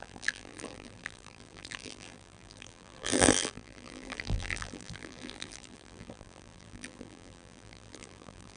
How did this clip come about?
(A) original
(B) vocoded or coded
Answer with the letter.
B